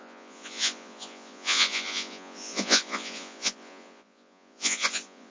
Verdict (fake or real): fake